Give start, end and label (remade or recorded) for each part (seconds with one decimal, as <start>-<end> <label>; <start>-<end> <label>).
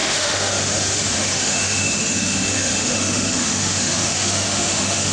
0.0-5.1 remade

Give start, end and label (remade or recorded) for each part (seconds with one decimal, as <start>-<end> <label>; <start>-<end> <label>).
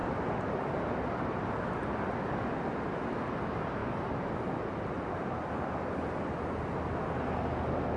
0.0-8.0 recorded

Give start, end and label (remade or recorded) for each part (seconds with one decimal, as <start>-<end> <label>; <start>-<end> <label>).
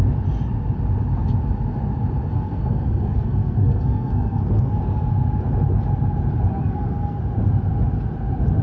0.0-2.3 recorded; 2.3-4.8 remade; 4.8-6.5 recorded; 6.5-7.2 remade; 7.2-8.6 recorded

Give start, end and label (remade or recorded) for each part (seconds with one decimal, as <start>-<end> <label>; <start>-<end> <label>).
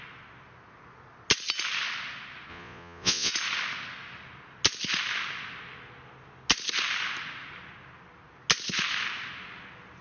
0.0-2.5 recorded; 2.5-3.3 remade; 3.3-10.0 recorded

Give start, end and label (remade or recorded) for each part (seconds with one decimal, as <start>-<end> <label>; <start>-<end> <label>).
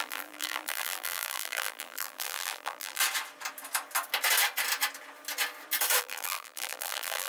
0.0-3.0 remade; 3.0-6.0 recorded; 6.0-7.3 remade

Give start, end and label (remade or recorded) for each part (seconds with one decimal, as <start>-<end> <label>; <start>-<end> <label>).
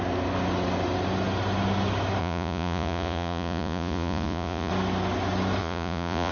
0.0-2.2 recorded; 2.2-4.7 remade; 4.7-5.6 recorded; 5.6-6.3 remade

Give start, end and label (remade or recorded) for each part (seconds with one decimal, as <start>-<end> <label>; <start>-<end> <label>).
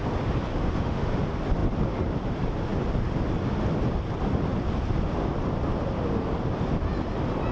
0.0-0.5 recorded; 0.5-1.0 remade; 1.0-7.5 recorded